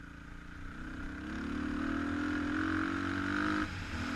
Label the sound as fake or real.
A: real